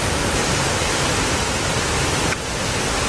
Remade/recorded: recorded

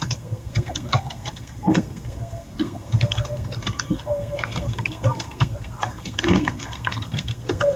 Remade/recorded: remade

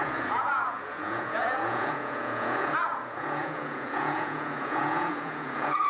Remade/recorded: remade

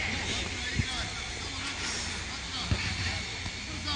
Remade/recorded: recorded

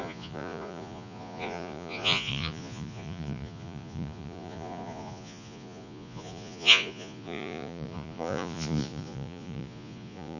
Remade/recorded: remade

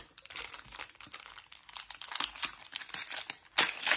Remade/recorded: recorded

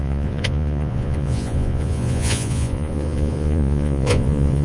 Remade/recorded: remade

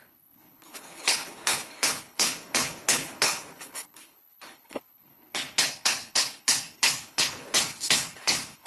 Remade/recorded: remade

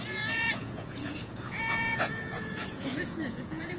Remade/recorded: remade